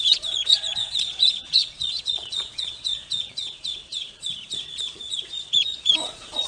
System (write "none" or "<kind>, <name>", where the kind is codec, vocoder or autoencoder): vocoder, Vocos